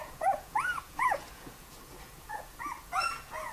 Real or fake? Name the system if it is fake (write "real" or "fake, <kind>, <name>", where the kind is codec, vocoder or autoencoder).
fake, vocoder, Vocos